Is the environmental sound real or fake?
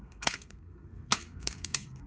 fake